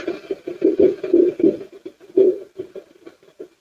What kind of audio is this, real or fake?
real